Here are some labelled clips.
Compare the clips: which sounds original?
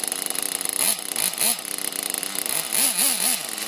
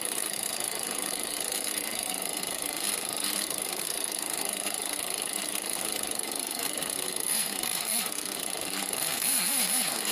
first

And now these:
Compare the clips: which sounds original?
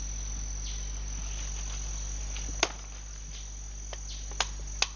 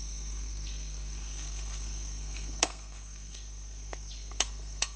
first